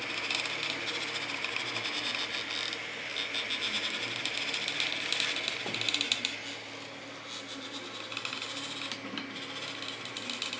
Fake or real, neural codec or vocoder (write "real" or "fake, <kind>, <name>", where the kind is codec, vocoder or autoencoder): real